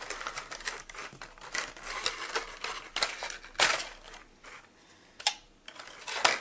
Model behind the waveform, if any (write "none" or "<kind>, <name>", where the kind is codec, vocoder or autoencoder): none